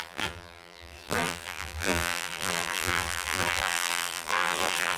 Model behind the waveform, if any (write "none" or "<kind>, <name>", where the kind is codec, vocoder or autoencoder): vocoder, BigVGAN v2